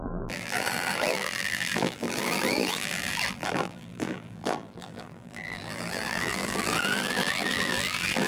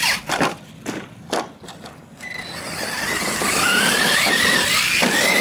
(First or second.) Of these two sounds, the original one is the second